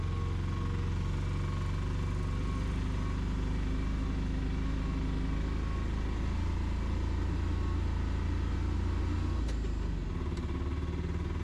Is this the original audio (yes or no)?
yes